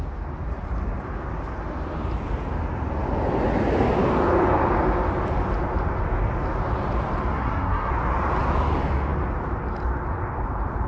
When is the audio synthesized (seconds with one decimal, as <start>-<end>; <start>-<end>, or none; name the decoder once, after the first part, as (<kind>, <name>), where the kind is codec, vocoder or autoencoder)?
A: 7.3-7.9 (codec, SNAC)